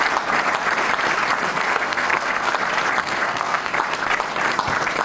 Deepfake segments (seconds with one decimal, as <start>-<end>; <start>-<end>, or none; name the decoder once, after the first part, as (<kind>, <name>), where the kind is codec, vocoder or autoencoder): 1.7-2.5 (codec, SNAC); 3.0-3.7